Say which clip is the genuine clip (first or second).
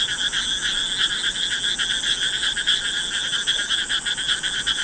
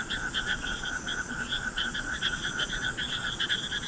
first